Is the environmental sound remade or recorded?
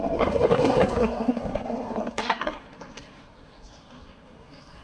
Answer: remade